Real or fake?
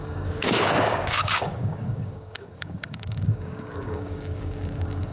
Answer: fake